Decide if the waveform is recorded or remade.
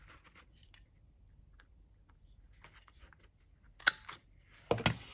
recorded